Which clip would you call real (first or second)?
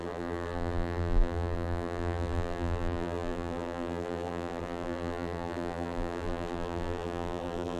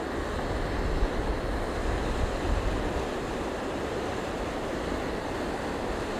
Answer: second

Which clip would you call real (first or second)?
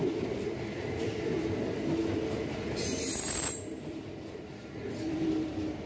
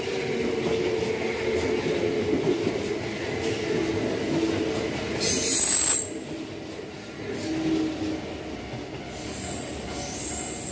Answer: second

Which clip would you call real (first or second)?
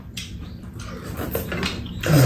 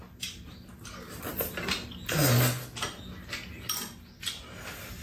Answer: second